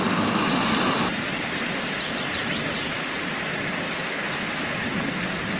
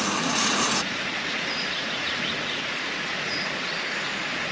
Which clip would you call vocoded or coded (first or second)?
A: second